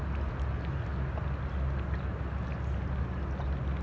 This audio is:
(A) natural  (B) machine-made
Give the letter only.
A